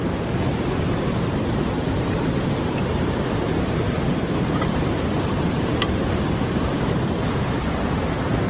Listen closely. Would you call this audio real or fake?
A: fake